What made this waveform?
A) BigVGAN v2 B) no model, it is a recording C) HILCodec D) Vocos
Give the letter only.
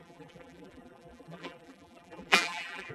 A